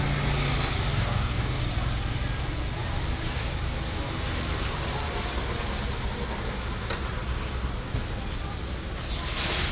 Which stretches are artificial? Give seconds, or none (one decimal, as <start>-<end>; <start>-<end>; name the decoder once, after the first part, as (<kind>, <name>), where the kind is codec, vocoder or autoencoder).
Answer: 0.9-1.6 (codec, DAC)